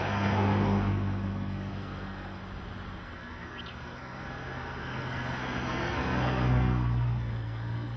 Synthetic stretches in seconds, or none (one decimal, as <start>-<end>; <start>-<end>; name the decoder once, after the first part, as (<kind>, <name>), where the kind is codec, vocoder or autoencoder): 0.0-2.4 (codec, SNAC); 3.0-8.0